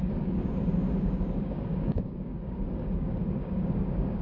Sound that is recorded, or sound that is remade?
remade